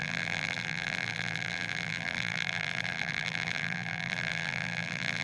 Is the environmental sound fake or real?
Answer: fake